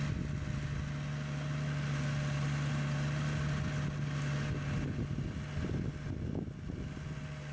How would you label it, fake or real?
real